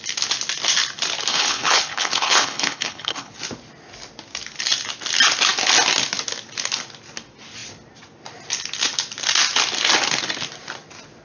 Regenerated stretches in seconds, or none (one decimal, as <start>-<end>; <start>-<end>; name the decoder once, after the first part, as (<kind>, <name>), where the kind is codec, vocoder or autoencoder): 1.3-3.3 (codec, HILCodec)